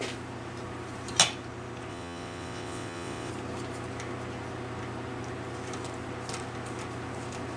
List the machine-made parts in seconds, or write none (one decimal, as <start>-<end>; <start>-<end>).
1.9-3.3